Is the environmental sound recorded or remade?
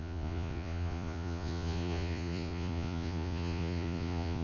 remade